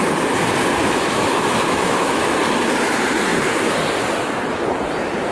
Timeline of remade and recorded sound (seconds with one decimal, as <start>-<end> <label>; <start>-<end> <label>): 0.0-0.8 recorded; 0.8-2.4 remade; 2.4-5.3 recorded